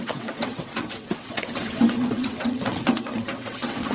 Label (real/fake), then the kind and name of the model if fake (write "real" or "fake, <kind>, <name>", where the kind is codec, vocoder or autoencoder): fake, vocoder, WaveNeXt